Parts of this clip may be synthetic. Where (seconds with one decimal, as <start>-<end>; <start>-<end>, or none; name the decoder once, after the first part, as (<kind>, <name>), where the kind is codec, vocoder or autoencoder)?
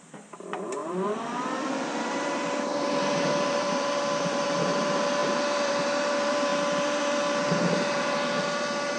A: 0.0-9.0 (vocoder, BigVGAN v2)